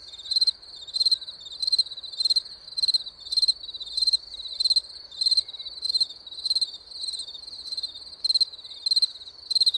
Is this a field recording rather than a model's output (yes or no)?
yes